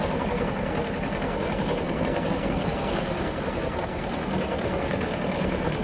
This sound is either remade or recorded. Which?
remade